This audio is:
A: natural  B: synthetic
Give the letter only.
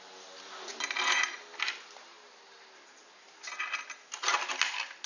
A